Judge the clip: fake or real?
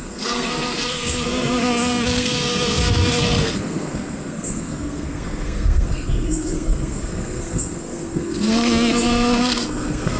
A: fake